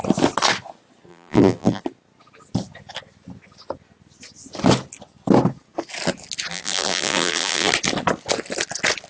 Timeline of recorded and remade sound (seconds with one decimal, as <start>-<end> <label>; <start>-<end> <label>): 0.0-1.1 recorded; 1.1-1.8 remade; 1.8-6.5 recorded; 6.5-7.7 remade; 7.7-9.1 recorded